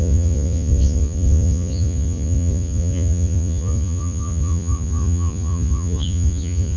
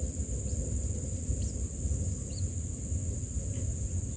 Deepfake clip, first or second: first